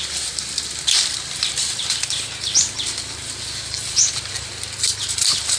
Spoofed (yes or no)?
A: no